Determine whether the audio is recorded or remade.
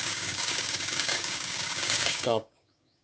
remade